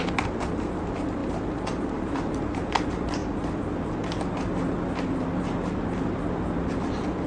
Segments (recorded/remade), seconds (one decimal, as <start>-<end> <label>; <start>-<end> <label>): 0.0-1.2 recorded; 1.2-2.4 remade; 2.4-3.2 recorded; 3.2-3.7 remade; 3.7-7.3 recorded